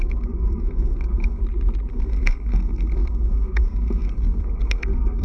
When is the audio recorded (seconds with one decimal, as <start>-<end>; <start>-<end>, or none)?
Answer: 1.4-1.9